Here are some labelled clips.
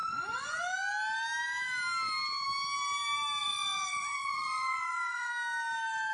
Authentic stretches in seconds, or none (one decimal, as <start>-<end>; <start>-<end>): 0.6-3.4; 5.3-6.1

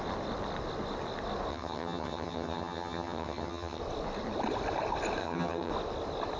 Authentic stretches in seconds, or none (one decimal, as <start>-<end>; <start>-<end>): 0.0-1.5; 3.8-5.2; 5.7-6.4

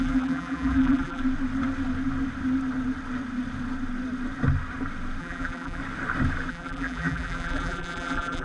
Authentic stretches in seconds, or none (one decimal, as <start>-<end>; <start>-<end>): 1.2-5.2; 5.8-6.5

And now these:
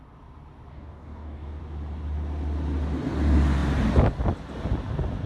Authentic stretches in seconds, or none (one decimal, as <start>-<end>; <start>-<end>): 0.0-0.7; 1.6-5.3